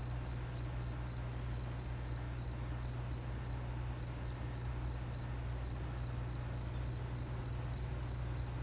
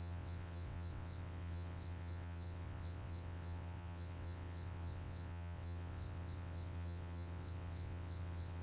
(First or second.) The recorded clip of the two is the first